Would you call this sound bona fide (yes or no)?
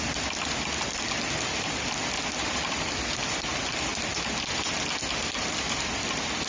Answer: yes